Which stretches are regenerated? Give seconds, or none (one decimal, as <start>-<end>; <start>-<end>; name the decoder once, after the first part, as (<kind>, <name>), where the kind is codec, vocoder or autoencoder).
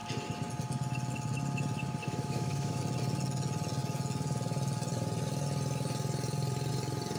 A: 2.0-2.8 (autoencoder, DAC-VAE)